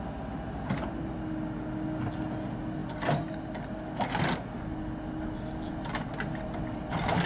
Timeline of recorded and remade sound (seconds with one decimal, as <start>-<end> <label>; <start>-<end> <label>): 0.0-7.3 recorded